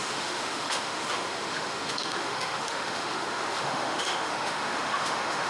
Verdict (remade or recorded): remade